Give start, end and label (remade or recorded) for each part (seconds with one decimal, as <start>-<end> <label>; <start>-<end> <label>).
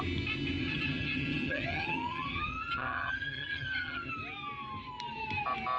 0.0-0.6 recorded; 0.6-4.1 remade; 4.1-5.8 recorded